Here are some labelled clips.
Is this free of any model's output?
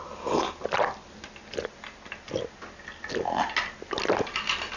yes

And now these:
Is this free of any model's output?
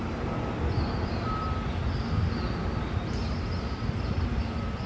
yes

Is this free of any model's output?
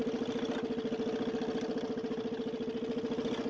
yes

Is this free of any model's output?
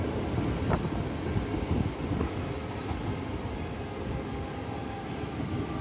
yes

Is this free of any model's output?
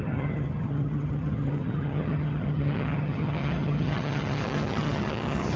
no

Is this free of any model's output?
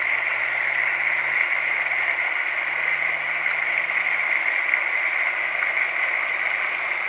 yes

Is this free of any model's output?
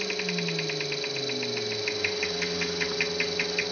yes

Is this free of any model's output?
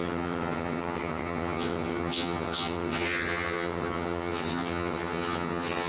no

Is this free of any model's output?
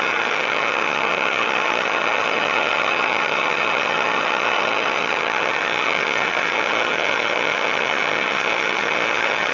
no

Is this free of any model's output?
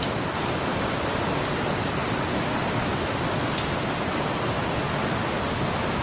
yes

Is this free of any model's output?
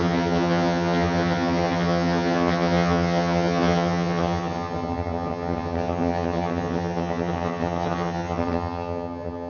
no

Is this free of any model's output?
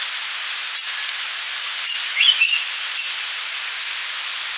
yes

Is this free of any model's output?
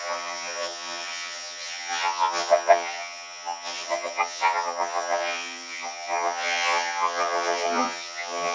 no